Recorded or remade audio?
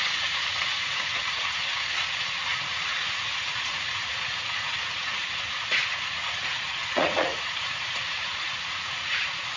remade